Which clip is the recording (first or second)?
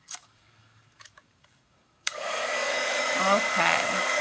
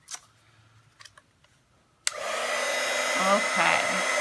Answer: second